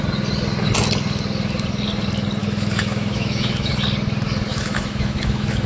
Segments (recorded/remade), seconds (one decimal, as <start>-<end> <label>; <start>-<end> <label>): 0.0-2.4 recorded; 2.4-3.7 remade; 3.7-4.5 recorded; 4.5-5.7 remade